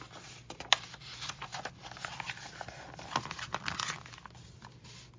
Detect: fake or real real